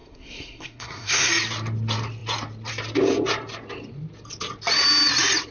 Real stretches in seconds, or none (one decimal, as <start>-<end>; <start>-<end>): 1.3-5.5